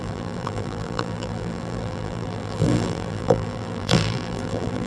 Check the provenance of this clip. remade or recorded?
remade